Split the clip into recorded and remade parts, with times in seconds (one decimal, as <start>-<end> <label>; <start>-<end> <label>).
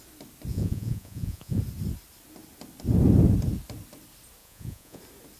0.0-0.5 recorded; 0.5-1.6 remade; 1.6-4.4 recorded; 4.4-5.0 remade; 5.0-5.4 recorded